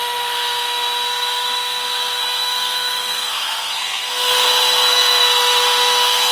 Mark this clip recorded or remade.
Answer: remade